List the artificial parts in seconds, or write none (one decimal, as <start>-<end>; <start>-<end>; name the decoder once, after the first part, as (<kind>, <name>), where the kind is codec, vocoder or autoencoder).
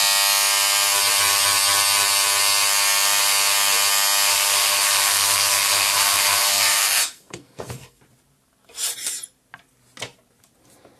4.3-8.0 (codec, SNAC)